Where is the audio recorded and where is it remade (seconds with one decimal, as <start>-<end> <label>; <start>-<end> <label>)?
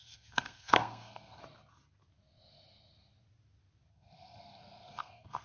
0.0-1.4 remade; 1.4-3.9 recorded; 3.9-5.4 remade